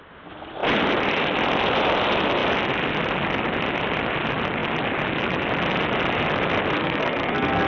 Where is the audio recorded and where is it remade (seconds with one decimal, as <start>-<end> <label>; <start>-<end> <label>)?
0.0-6.8 recorded; 6.8-7.7 remade